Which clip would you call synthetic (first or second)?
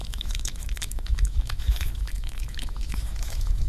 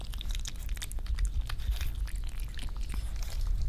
first